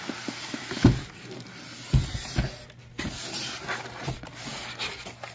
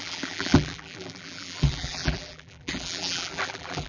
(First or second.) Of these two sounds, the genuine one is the first